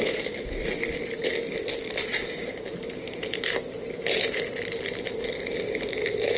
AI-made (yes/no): no